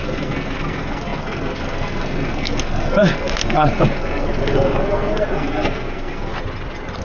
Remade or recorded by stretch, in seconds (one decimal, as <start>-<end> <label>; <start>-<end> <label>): 0.0-6.3 remade; 6.3-7.0 recorded